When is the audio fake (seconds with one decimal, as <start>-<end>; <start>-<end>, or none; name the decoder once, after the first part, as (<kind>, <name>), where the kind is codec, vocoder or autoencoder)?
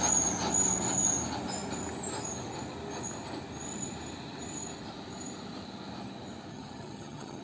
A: 6.5-7.4 (vocoder, HiFi-GAN)